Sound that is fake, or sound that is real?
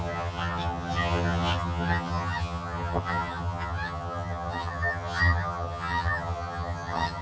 fake